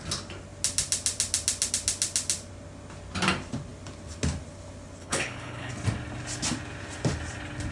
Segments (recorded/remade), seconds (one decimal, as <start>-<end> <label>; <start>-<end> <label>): 0.0-5.0 recorded; 5.0-5.7 remade; 5.7-7.7 recorded